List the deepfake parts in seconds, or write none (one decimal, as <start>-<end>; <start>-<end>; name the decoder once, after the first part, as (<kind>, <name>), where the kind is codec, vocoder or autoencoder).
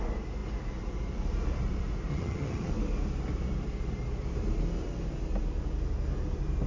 2.1-2.7 (vocoder, HiFi-GAN)